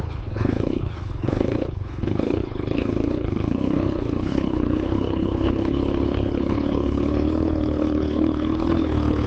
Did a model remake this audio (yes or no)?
yes